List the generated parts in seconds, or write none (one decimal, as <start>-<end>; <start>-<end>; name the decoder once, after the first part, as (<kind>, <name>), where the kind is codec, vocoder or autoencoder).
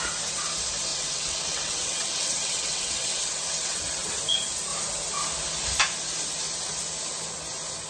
0.9-4.1 (vocoder, WaveNeXt)